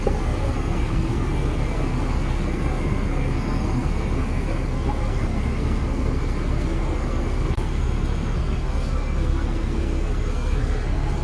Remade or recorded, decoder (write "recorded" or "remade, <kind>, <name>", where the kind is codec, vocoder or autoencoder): remade, codec, SNAC